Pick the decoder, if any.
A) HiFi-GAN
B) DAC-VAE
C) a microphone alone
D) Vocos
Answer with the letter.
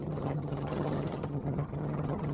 A